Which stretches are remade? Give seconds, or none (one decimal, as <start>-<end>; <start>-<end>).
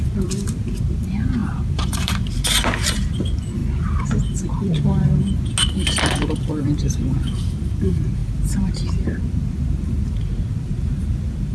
0.0-3.6; 6.6-11.5